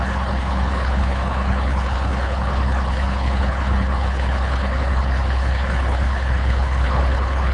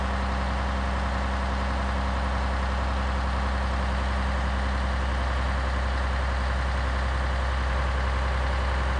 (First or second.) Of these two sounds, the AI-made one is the first